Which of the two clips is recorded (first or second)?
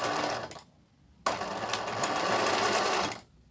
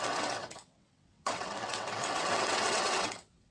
first